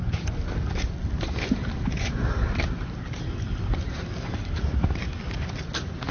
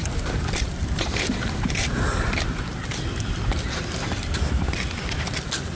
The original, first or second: first